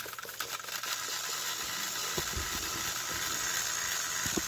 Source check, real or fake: real